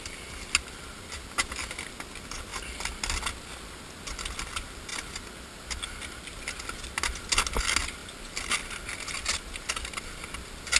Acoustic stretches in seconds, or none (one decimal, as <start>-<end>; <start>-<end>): 0.0-10.8